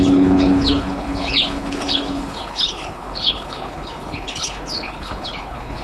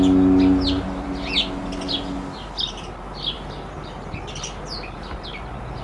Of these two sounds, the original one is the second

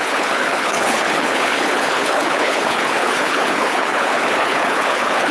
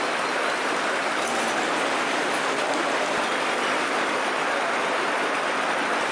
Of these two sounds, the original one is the second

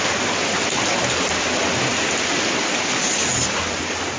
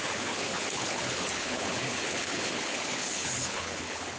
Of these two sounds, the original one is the first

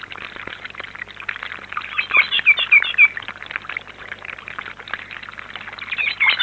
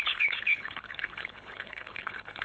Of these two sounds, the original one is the first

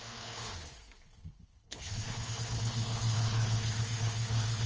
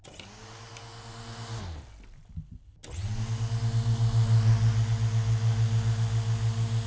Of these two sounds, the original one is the second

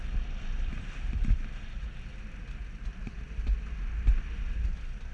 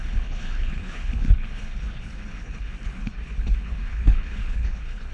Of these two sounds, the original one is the first